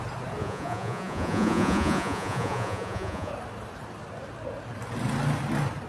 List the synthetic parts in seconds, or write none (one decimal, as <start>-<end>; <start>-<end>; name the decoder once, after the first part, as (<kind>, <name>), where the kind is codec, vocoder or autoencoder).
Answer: 0.4-3.3 (vocoder, Vocos)